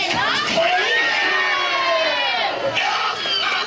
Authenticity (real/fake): real